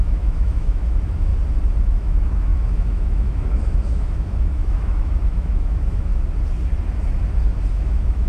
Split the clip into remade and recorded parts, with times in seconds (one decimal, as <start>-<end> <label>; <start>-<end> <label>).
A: 0.0-1.3 remade; 1.3-1.8 recorded; 1.8-6.1 remade; 6.1-7.7 recorded; 7.7-8.3 remade